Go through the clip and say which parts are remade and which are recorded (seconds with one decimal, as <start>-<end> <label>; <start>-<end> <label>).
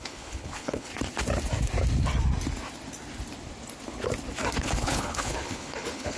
0.0-0.9 remade; 0.9-4.6 recorded; 4.6-6.2 remade